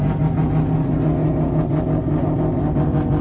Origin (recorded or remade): recorded